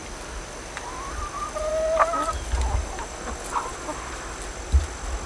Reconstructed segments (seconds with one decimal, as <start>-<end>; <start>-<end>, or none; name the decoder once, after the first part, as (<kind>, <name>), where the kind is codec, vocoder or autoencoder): 0.0-1.7 (vocoder, BigVGAN v2)